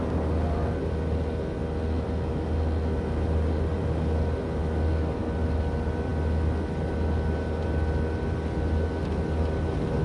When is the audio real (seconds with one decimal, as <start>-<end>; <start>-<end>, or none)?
0.0-10.0

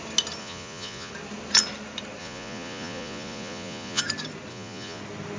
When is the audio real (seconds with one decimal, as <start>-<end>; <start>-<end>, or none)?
0.0-0.4; 1.1-2.2; 4.0-4.5; 5.0-5.4

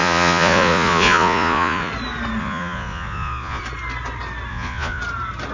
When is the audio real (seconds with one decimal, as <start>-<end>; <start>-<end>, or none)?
1.9-2.4; 3.6-4.5; 5.0-5.5